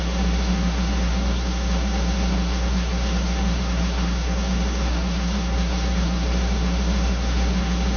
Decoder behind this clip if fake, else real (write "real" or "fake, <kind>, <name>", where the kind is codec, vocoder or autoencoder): fake, codec, SNAC